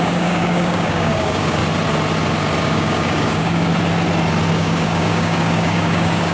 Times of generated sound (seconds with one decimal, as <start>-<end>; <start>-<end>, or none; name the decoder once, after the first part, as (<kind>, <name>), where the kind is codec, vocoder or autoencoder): 0.0-1.6 (codec, DAC); 2.6-3.7; 4.5-6.3